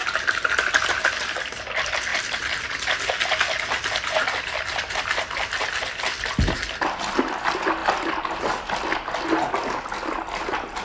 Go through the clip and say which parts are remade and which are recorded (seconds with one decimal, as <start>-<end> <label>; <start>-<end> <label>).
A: 0.0-10.8 recorded